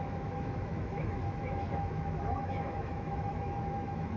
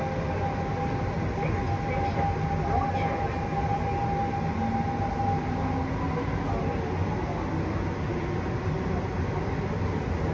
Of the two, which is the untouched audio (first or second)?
second